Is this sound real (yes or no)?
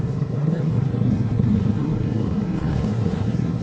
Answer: no